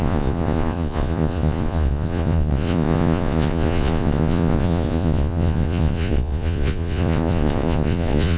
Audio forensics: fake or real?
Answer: fake